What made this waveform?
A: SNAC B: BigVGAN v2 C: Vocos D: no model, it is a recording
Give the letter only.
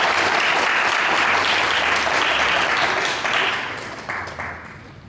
D